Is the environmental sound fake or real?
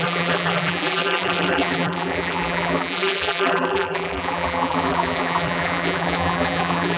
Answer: fake